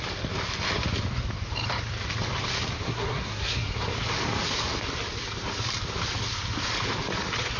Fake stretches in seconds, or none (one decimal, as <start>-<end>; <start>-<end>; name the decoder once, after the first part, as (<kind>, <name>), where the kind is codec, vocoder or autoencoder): 2.8-3.9 (codec, SNAC)

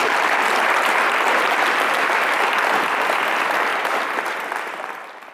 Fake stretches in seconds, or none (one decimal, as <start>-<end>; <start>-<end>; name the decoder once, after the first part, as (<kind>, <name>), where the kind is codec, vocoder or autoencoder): 0.0-2.4 (vocoder, BigVGAN v2); 3.7-5.3

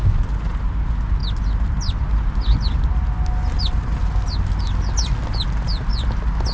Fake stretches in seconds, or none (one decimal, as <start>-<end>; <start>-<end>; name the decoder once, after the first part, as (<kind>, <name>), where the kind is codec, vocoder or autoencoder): none

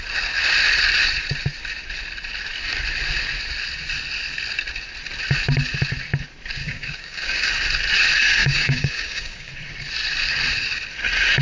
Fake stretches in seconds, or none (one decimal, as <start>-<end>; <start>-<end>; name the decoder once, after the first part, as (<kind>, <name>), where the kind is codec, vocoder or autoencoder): 6.6-7.5 (codec, DAC); 8.4-9.5